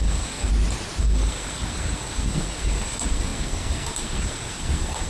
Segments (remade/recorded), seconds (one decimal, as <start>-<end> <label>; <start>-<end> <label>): 0.0-0.5 remade; 0.5-1.0 recorded; 1.0-5.1 remade